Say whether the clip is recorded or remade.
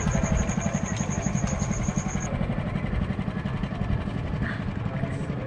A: recorded